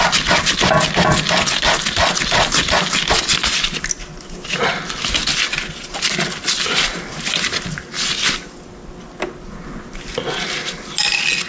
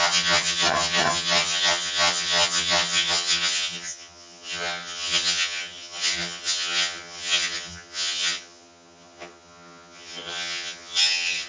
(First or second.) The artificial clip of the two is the second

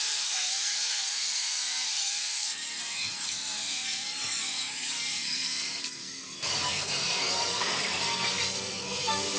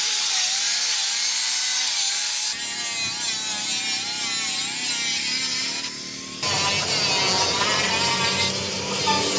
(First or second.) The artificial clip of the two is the first